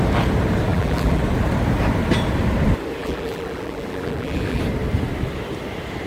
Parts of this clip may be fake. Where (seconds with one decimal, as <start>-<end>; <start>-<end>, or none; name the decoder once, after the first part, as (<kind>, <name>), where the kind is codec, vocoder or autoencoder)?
0.7-1.2 (vocoder, BigVGAN v2); 3.0-4.6